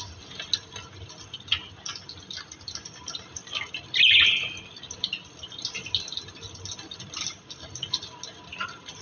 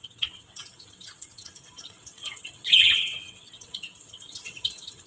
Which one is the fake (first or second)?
second